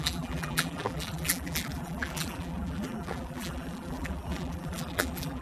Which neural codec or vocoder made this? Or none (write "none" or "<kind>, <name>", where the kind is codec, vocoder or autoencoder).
vocoder, BigVGAN v2